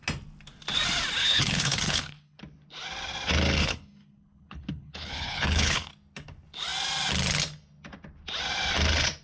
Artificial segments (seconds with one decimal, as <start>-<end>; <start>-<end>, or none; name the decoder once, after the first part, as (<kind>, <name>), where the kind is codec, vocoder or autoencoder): 1.2-2.4 (codec, HILCodec); 3.6-5.9